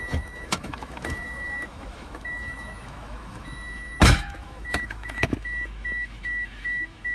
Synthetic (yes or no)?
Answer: yes